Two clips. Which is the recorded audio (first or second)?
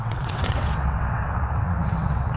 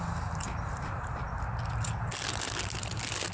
second